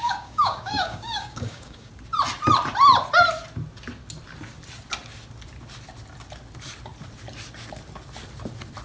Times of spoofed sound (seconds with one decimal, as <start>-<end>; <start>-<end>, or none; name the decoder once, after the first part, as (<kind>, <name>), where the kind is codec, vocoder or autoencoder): 0.0-1.9 (codec, DAC)

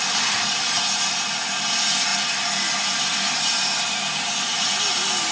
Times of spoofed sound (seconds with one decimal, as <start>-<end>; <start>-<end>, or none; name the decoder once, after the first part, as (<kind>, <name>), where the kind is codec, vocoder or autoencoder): none

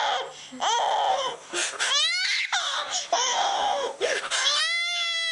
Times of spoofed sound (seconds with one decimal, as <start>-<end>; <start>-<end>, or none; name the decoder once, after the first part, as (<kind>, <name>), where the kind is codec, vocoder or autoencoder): 1.1-1.9 (codec, DAC); 2.6-4.6

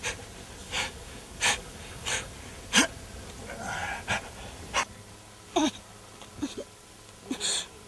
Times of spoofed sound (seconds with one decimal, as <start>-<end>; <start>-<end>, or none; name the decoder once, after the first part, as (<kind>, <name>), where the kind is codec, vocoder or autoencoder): 0.6-2.3 (codec, DAC)

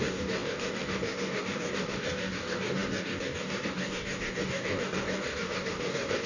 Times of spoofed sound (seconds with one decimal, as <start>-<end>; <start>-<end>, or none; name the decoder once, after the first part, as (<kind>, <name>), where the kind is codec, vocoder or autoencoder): 0.0-6.3 (codec, DAC)